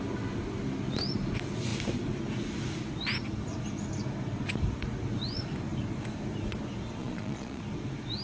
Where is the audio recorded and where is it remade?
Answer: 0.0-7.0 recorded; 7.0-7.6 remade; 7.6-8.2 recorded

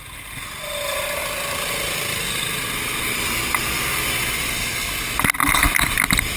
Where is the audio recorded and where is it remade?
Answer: 0.0-1.2 recorded; 1.2-5.0 remade; 5.0-6.4 recorded

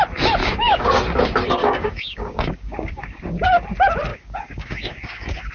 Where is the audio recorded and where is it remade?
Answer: 0.0-0.4 recorded; 0.4-0.9 remade; 0.9-1.6 recorded; 1.6-3.2 remade; 3.2-4.1 recorded; 4.1-5.5 remade